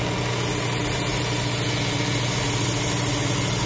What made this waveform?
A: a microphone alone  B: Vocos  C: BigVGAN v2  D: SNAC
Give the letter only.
A